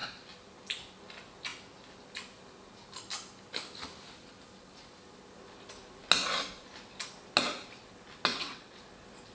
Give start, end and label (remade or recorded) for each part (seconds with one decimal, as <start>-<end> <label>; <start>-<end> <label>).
0.0-8.3 recorded; 8.3-8.8 remade; 8.8-9.3 recorded